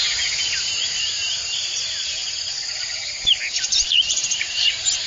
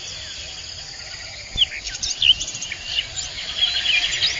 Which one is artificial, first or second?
first